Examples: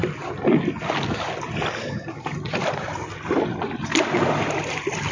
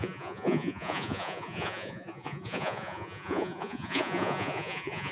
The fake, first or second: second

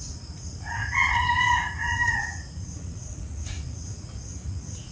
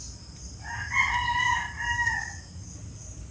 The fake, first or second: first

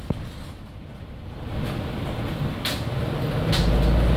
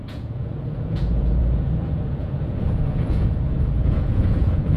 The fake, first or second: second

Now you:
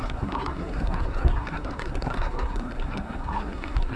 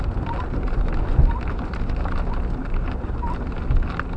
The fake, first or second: first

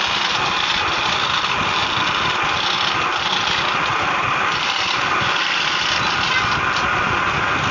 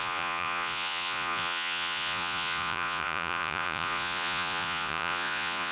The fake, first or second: second